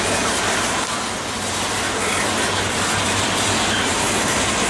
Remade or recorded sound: recorded